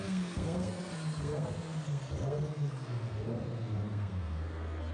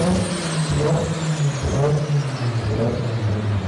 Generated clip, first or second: first